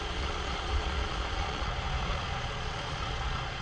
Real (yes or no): no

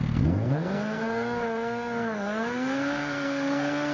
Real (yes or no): no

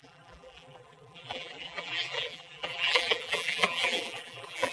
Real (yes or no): no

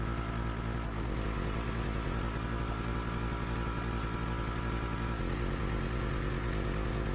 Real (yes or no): yes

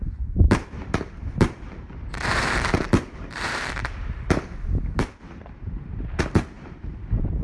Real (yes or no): no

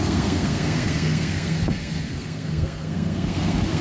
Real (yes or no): no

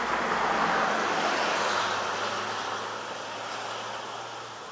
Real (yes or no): yes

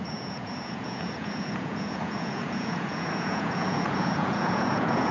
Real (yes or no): no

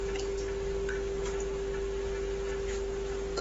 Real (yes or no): yes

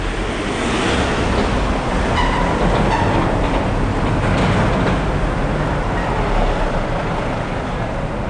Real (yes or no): yes